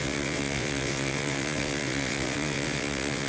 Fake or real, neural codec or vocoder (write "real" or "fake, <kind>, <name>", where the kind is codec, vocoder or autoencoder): fake, vocoder, WaveNeXt